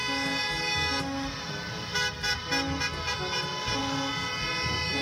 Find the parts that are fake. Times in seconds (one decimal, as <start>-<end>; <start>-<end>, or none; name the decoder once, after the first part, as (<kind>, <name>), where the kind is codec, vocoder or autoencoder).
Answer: 1.9-2.5 (vocoder, BigVGAN v2); 3.8-4.5